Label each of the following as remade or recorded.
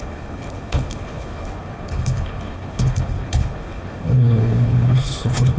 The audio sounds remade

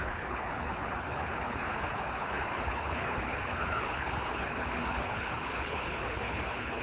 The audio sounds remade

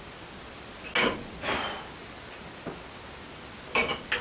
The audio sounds recorded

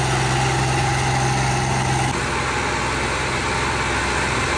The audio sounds recorded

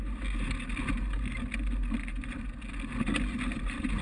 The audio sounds recorded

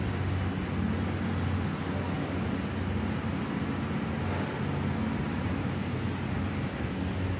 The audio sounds recorded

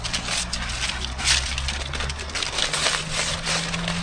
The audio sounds recorded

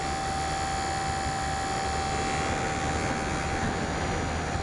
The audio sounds recorded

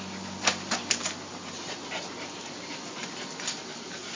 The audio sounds recorded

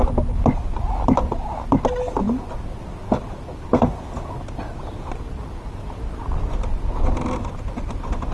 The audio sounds recorded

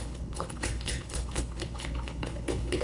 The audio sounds remade